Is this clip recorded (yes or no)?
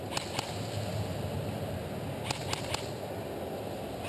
yes